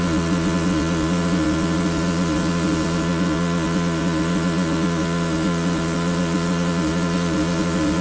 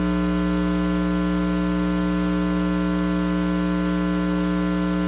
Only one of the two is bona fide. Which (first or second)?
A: second